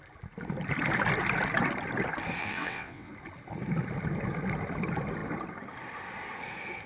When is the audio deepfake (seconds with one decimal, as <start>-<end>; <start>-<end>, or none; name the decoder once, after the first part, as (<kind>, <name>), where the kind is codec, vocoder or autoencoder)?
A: 2.4-3.1 (vocoder, WaveNeXt)